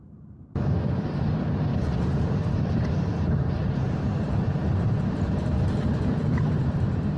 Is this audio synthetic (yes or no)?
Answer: yes